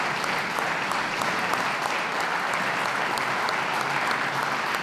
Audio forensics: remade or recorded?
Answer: recorded